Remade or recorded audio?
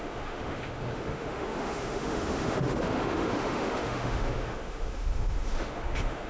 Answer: remade